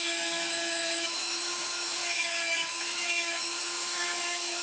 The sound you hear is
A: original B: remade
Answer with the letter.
B